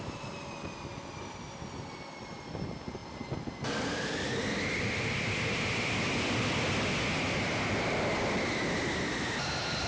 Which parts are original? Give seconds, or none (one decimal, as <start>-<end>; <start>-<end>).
0.0-0.9; 1.8-3.0; 6.6-9.9